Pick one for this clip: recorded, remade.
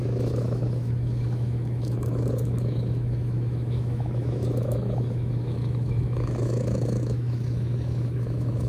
remade